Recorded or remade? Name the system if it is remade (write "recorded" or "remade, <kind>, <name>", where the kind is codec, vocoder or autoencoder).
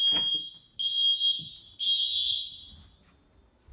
recorded